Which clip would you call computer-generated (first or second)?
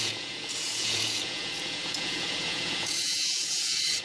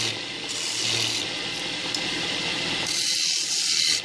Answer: first